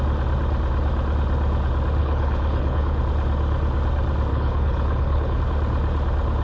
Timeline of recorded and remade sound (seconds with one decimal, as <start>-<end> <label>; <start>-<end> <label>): 0.0-2.0 recorded; 2.0-3.0 remade; 3.0-4.3 recorded; 4.3-5.4 remade; 5.4-6.4 recorded